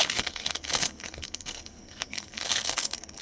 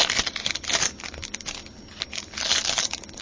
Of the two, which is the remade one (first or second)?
first